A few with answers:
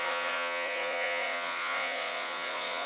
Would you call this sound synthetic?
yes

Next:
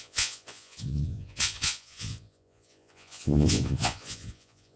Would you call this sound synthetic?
yes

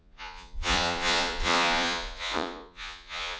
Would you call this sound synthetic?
yes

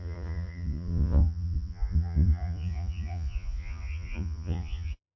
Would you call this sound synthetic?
yes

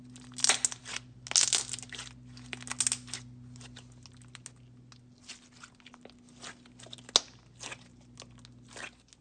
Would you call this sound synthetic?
no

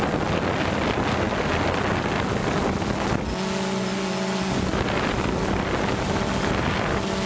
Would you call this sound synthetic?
no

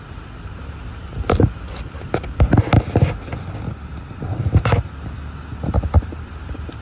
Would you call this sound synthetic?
no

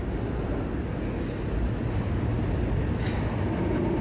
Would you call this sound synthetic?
no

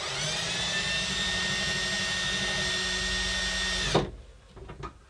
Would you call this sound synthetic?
no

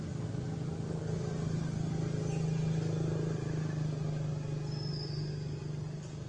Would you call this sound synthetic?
no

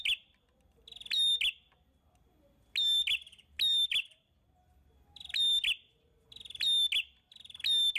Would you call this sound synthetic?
no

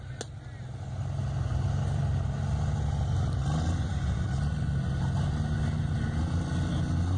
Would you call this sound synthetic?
no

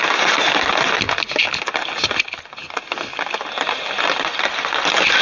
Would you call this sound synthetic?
no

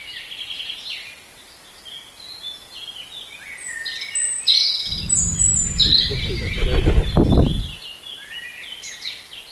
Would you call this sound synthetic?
no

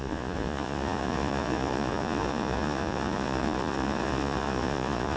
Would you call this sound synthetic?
yes